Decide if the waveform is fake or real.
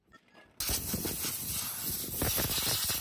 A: real